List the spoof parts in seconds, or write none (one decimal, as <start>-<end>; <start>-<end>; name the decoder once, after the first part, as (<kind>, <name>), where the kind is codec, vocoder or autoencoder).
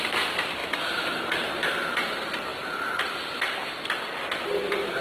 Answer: 0.6-1.2 (vocoder, BigVGAN v2)